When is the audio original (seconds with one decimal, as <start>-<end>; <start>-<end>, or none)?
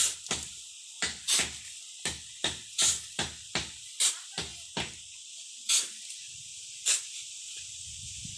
0.0-8.4